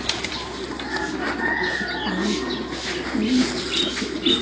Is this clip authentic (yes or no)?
yes